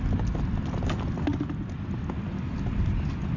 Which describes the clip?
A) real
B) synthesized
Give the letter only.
A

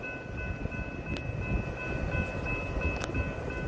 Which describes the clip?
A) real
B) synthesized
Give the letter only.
A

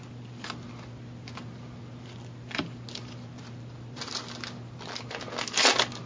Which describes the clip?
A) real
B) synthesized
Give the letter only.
A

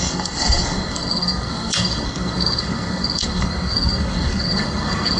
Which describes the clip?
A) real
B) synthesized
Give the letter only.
B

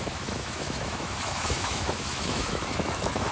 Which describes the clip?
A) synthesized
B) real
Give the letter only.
A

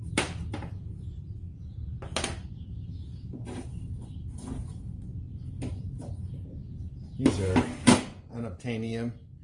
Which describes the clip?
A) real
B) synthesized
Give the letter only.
B